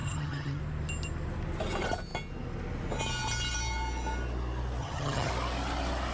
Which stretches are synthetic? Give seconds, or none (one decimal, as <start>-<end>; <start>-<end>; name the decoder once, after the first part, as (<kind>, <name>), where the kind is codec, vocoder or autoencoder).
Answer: 0.0-0.6 (vocoder, HiFi-GAN); 4.8-5.3